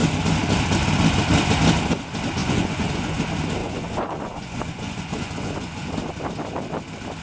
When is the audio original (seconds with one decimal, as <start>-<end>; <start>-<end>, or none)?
0.0-2.4; 3.2-3.6; 5.9-7.2